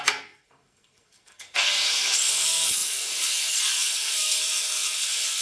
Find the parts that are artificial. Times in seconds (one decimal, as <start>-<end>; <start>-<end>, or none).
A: 0.0-5.4